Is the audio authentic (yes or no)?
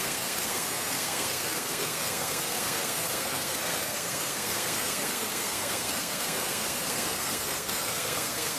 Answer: no